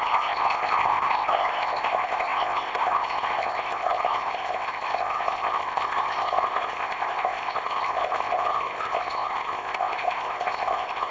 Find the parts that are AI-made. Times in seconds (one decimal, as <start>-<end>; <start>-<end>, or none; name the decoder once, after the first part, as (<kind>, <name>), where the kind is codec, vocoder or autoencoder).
0.0-11.1 (codec, ZipCodec)